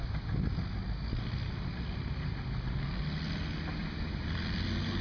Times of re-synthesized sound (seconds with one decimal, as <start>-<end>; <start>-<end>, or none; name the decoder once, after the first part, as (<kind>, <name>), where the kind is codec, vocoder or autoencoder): none